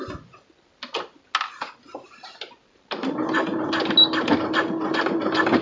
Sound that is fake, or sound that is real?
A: real